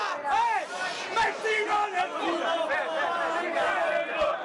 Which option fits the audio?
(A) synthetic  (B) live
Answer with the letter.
B